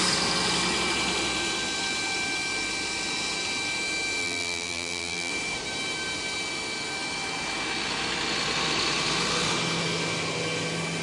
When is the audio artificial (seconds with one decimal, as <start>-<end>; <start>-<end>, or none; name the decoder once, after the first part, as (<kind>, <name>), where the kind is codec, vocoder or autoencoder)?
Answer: 4.2-5.3 (vocoder, BigVGAN v2)